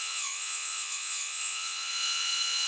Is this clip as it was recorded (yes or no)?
no